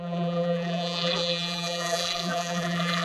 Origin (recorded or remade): remade